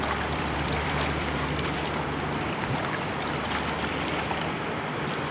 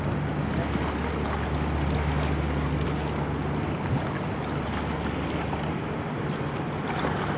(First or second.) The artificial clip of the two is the first